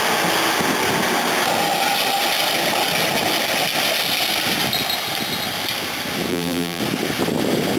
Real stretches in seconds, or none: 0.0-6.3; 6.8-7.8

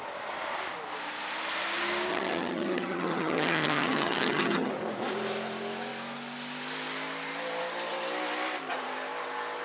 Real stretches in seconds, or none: 0.0-2.1; 4.7-9.6

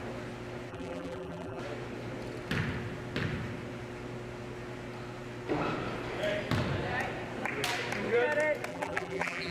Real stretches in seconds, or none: 0.0-0.7; 1.6-8.7

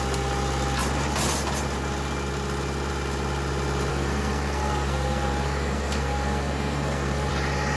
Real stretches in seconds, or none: 0.0-3.9; 7.3-7.8

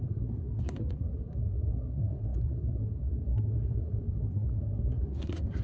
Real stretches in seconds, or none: none

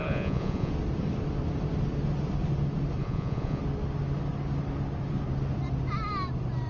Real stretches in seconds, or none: 0.7-3.0; 3.6-6.7

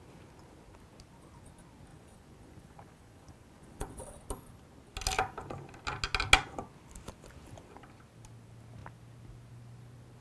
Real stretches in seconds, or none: 0.0-1.9; 4.0-10.2